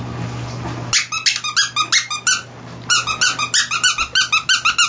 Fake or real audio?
real